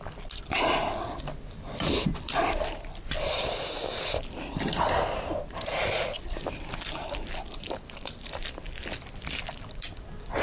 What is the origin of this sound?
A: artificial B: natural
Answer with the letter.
A